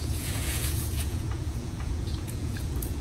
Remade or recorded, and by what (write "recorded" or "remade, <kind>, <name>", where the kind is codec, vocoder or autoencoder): remade, vocoder, Vocos